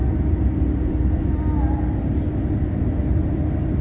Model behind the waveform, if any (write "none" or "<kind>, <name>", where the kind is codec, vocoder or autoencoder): none